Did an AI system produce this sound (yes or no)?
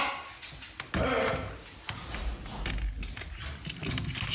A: no